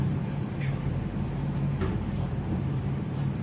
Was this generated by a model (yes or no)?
yes